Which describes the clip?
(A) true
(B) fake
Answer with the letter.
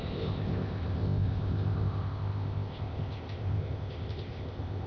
B